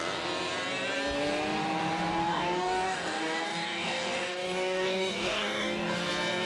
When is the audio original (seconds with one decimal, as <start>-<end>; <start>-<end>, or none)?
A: 0.0-2.2; 6.1-6.5